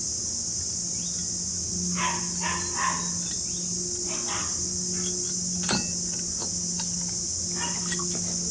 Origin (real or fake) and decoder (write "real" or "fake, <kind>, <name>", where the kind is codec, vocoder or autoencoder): real